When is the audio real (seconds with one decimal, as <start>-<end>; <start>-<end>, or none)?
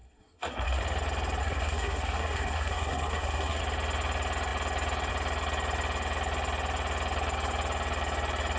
0.8-1.4; 3.6-8.6